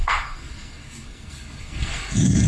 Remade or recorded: remade